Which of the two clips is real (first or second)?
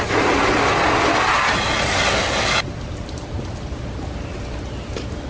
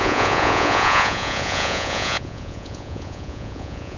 first